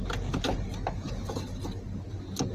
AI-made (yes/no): no